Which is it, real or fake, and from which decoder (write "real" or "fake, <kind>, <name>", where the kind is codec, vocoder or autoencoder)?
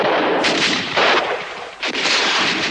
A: fake, vocoder, BigVGAN v2